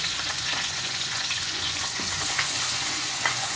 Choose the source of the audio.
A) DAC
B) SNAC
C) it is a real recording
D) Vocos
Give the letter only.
D